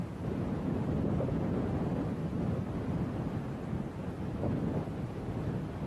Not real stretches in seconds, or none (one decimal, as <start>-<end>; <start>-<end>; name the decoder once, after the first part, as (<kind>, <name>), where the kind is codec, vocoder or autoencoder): 0.0-2.2 (vocoder, BigVGAN v2)